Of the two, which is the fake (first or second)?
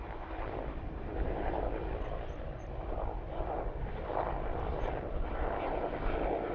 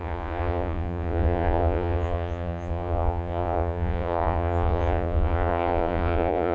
second